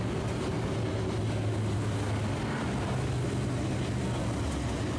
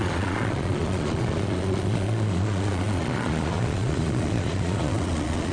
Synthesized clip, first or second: second